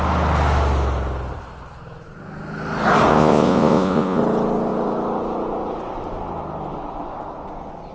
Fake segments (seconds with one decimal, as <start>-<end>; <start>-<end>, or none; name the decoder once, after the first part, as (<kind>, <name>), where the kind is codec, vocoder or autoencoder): 3.1-4.2 (vocoder, Vocos)